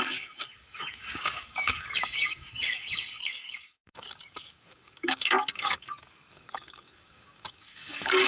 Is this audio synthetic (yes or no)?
yes